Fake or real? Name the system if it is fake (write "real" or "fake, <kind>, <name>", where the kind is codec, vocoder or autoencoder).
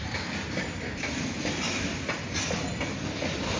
real